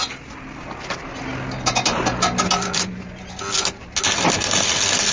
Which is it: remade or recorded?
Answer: recorded